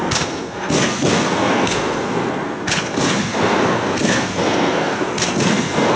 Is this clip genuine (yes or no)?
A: no